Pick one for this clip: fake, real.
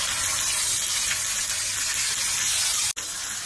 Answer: real